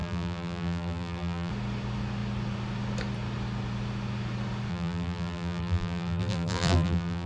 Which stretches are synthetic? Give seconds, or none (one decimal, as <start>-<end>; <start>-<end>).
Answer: 0.0-1.5; 4.7-7.3